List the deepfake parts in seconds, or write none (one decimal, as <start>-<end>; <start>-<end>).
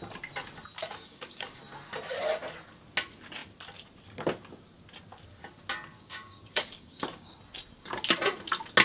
0.8-1.6; 5.9-7.4